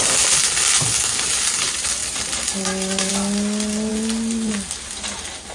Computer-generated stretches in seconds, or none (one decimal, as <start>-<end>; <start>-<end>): 2.0-3.1; 3.9-4.5